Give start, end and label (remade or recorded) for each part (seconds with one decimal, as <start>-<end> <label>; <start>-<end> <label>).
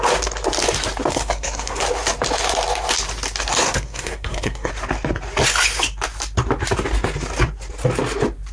0.0-1.1 recorded; 1.1-1.8 remade; 1.8-3.6 recorded; 3.6-4.7 remade; 4.7-8.5 recorded